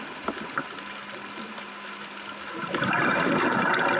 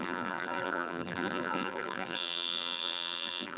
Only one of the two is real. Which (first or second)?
first